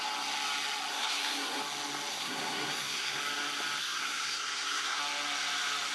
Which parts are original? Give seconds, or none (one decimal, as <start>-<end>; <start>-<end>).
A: 0.0-0.9; 1.6-2.1; 3.2-3.8; 5.0-5.9